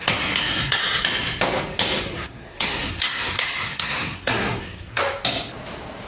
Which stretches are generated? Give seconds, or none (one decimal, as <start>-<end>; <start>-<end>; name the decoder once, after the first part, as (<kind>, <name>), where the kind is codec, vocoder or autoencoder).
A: 0.0-0.8 (codec, SNAC); 2.0-5.0